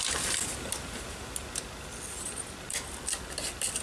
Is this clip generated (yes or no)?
no